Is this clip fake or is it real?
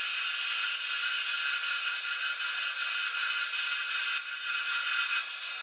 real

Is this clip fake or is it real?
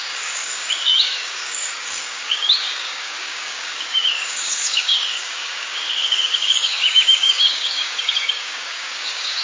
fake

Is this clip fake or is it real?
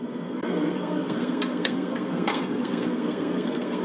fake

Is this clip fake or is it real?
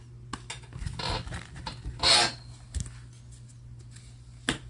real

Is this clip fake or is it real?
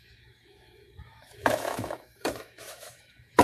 fake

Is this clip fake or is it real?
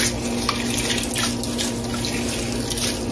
real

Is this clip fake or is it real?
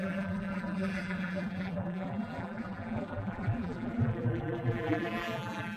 fake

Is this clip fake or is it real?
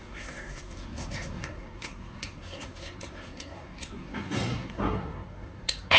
fake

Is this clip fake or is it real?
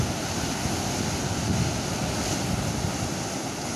real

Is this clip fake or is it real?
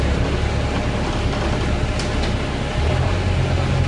real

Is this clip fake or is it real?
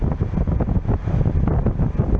real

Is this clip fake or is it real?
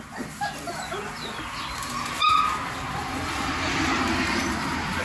fake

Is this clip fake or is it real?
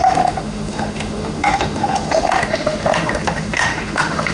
fake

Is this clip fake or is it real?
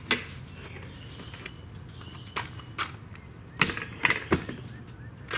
real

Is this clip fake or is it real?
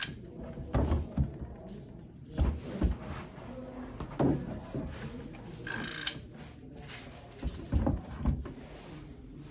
real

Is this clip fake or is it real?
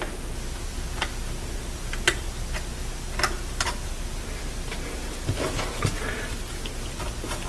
real